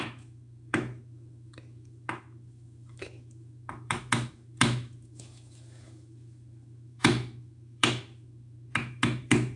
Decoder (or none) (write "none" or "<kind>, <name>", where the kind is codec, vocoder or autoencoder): autoencoder, DAC-VAE